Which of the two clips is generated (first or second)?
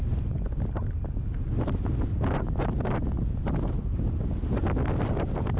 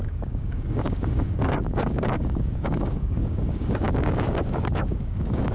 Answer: second